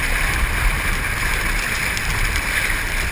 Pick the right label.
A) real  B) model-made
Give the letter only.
B